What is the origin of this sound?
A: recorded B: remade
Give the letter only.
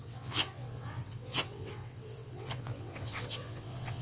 B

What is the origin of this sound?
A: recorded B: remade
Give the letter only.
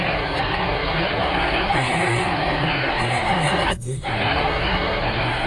B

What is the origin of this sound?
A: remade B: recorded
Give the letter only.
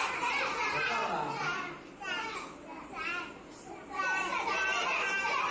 B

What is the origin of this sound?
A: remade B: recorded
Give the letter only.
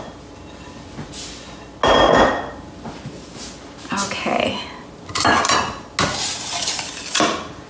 B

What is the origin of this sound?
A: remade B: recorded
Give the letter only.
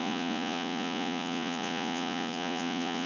A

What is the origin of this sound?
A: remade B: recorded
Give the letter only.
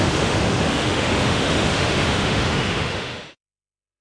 A